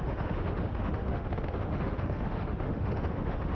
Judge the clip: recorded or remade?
remade